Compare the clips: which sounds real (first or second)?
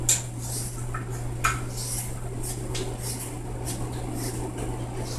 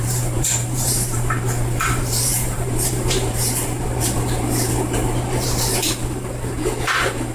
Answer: first